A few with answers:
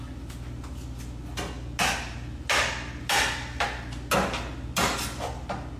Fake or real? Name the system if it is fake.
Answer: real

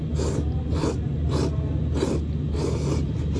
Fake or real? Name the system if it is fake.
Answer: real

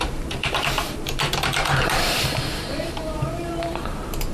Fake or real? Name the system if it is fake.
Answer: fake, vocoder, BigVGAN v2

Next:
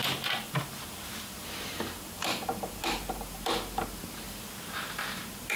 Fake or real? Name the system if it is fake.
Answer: fake, vocoder, BigVGAN v2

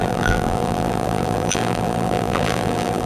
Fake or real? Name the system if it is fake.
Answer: fake, vocoder, BigVGAN v2